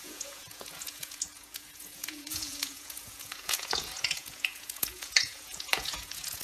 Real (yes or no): no